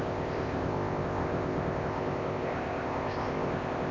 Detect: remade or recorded remade